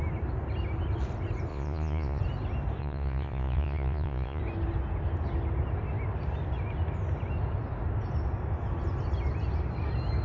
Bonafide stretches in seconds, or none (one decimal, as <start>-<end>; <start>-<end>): 0.0-1.5; 2.2-2.8; 4.4-10.2